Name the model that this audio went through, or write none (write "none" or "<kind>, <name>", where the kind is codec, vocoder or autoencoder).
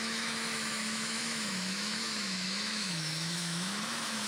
autoencoder, DAC-VAE